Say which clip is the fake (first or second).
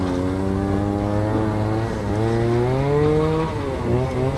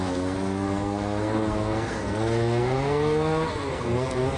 second